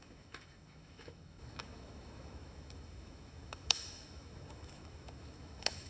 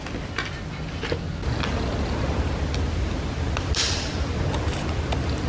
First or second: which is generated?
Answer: first